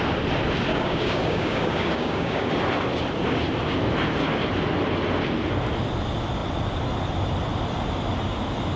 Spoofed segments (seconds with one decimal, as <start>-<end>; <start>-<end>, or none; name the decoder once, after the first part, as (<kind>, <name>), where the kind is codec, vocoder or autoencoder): 0.7-2.5 (codec, DAC)